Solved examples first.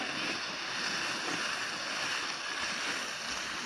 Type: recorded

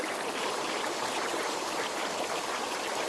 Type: recorded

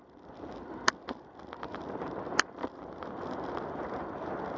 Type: recorded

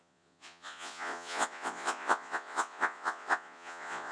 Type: remade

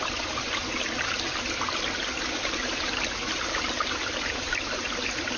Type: recorded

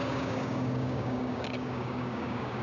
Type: remade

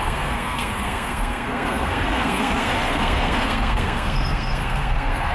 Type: remade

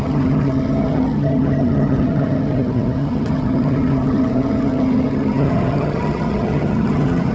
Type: remade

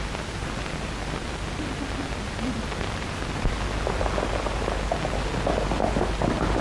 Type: recorded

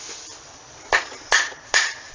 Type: recorded